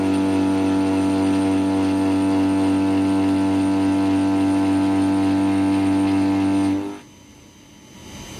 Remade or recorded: recorded